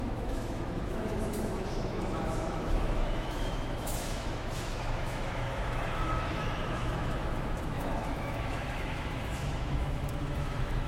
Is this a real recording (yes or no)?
no